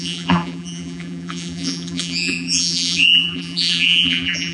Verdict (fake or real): fake